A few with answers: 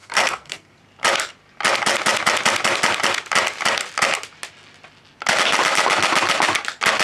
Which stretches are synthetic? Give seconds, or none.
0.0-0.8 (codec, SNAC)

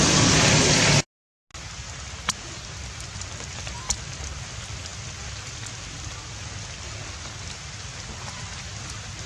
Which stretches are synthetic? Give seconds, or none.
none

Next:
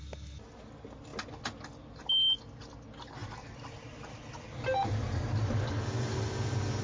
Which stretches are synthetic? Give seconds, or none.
none

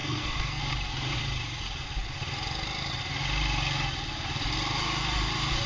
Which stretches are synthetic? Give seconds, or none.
0.0-0.6 (codec, SNAC)